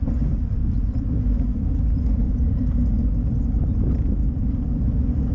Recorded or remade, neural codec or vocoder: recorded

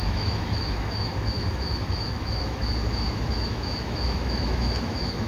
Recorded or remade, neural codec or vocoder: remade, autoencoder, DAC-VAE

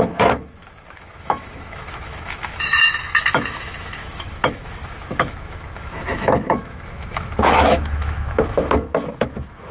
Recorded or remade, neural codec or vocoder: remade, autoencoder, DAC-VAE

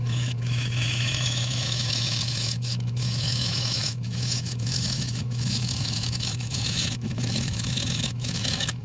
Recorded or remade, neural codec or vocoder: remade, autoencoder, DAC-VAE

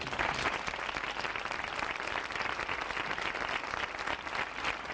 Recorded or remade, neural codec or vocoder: recorded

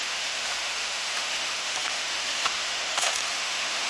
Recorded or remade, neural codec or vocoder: remade, autoencoder, DAC-VAE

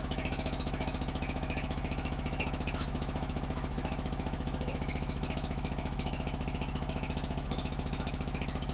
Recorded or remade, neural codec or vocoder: remade, autoencoder, DAC-VAE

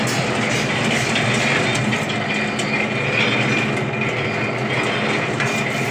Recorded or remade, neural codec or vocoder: recorded